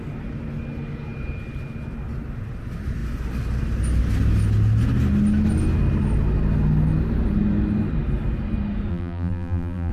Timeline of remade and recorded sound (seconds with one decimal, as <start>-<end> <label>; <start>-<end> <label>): 0.0-8.9 recorded; 8.9-9.9 remade